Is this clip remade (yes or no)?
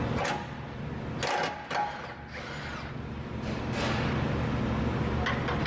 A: no